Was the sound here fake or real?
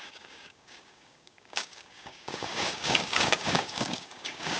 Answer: fake